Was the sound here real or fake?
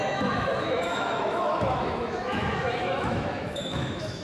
fake